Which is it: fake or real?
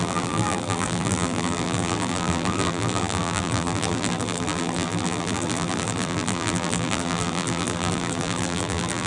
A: fake